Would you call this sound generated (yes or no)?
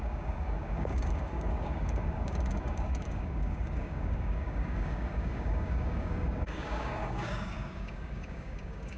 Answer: yes